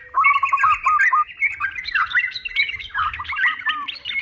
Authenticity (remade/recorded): recorded